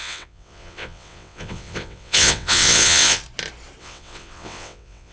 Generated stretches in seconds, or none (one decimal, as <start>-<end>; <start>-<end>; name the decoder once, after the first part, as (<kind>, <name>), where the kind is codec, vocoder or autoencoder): 0.0-3.2 (vocoder, WaveNeXt); 3.8-5.1